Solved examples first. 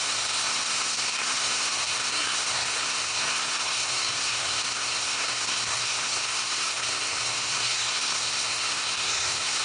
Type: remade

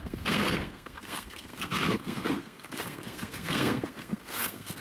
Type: remade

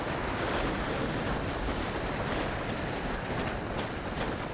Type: recorded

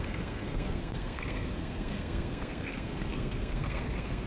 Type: remade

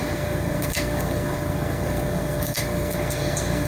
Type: remade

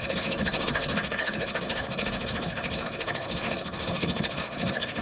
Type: remade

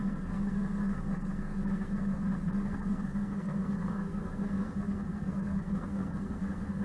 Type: remade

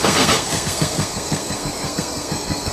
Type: remade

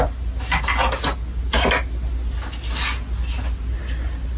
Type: recorded